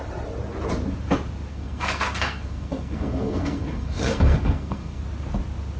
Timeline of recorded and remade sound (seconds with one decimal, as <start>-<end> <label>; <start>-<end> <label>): 0.0-1.5 recorded; 1.5-5.0 remade; 5.0-5.8 recorded